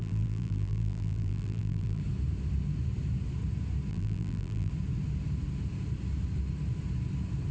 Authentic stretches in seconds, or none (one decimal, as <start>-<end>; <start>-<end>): 2.0-3.9; 4.7-7.5